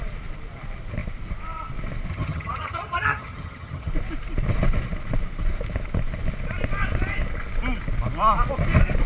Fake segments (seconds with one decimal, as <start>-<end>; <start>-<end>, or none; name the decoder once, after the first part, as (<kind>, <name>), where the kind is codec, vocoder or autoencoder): 2.1-3.9 (vocoder, HiFi-GAN)